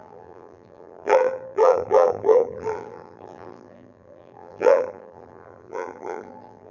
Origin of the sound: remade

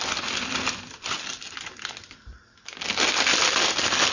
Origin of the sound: recorded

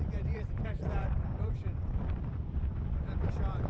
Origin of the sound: remade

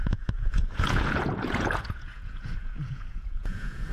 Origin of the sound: remade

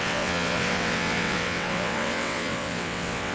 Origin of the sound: remade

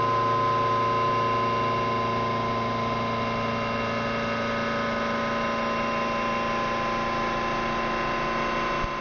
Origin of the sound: recorded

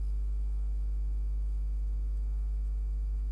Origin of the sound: recorded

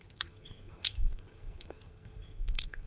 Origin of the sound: remade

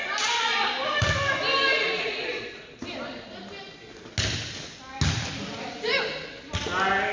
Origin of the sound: recorded